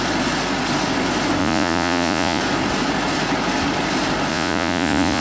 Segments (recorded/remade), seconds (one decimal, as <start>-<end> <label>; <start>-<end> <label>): 0.0-1.4 recorded; 1.4-2.4 remade; 2.4-4.3 recorded; 4.3-5.2 remade